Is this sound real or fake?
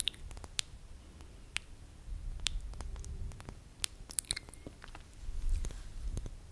fake